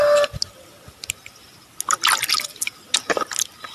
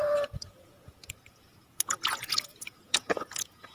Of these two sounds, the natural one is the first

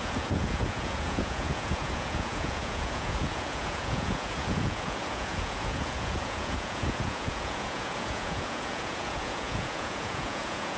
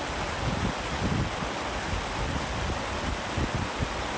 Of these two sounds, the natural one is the second